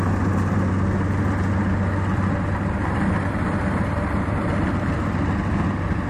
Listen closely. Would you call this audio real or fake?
real